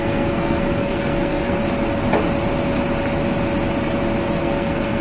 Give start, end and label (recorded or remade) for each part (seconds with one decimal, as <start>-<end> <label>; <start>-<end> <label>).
0.0-1.6 remade; 1.6-4.4 recorded; 4.4-5.0 remade